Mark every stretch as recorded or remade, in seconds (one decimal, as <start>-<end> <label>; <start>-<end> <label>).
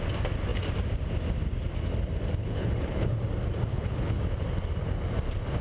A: 0.0-2.4 recorded; 2.4-3.1 remade; 3.1-3.7 recorded; 3.7-4.2 remade; 4.2-5.6 recorded